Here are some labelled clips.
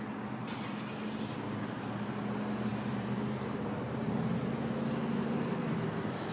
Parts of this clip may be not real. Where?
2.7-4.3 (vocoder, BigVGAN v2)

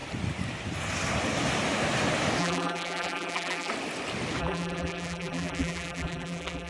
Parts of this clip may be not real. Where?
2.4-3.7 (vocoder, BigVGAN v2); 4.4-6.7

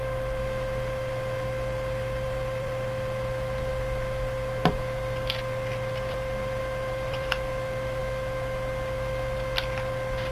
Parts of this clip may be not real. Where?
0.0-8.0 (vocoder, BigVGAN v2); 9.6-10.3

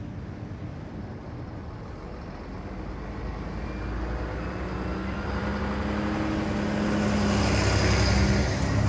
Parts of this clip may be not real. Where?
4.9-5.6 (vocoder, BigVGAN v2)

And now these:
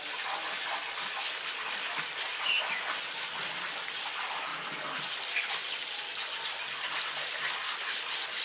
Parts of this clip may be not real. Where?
none